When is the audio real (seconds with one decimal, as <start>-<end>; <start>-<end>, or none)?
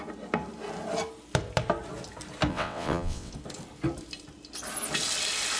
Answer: 0.0-2.5; 3.3-5.6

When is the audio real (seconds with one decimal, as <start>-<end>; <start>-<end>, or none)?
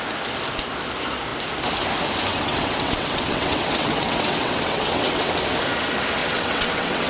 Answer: 0.0-2.3; 5.4-6.2